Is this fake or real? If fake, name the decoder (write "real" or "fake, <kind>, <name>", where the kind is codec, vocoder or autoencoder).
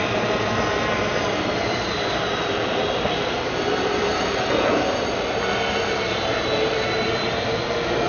fake, vocoder, BigVGAN v2